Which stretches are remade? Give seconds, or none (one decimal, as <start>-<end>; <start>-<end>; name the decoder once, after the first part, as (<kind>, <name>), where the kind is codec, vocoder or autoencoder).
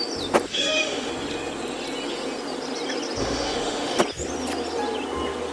0.5-1.1 (autoencoder, DAC-VAE); 3.2-4.0